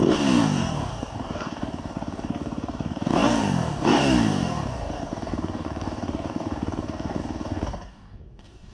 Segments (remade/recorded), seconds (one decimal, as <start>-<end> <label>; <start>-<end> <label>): 0.0-8.7 remade